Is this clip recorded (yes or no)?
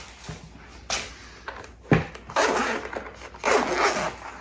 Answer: yes